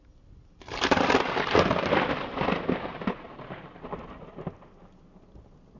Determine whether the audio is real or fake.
real